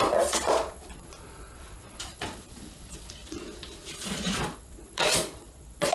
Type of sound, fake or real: fake